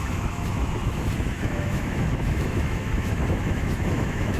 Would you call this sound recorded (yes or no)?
no